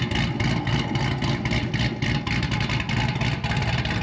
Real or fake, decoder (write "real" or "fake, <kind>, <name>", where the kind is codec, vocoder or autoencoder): real